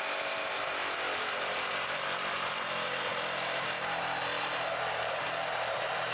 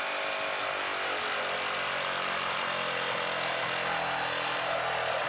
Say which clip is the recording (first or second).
second